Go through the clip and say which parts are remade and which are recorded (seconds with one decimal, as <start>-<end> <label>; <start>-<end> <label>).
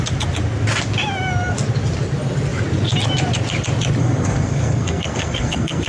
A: 0.0-4.0 recorded; 4.0-5.9 remade